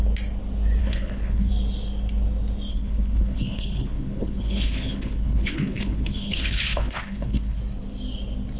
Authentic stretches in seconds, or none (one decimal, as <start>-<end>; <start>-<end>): 0.0-0.8; 1.5-2.7; 7.6-8.6